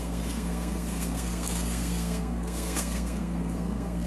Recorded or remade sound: remade